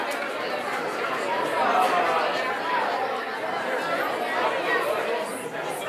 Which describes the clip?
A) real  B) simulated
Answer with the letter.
A